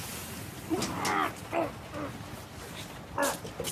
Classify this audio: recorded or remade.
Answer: recorded